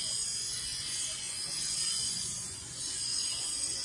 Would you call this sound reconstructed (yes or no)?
yes